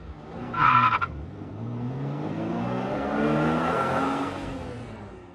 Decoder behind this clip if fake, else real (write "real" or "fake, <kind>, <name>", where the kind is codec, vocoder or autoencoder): fake, codec, SNAC